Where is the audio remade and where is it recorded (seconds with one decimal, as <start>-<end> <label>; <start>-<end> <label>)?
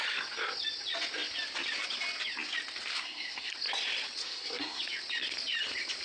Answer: 0.0-2.9 recorded; 2.9-3.5 remade; 3.5-4.2 recorded; 4.2-4.8 remade; 4.8-6.0 recorded